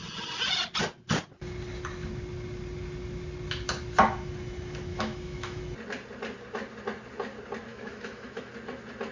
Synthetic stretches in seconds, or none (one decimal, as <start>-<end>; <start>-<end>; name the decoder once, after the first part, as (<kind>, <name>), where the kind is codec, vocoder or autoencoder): 4.9-5.6 (autoencoder, DAC-VAE); 7.7-8.5